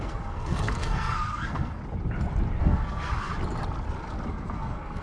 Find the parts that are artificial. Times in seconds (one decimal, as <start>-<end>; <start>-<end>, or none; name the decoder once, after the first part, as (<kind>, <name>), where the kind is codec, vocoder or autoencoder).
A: 0.0-1.8 (codec, SNAC); 2.6-3.3; 4.3-5.0